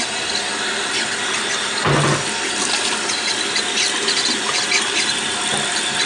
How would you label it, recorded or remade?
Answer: recorded